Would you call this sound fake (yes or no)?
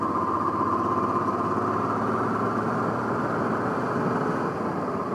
no